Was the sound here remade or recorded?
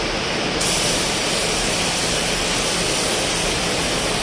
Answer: recorded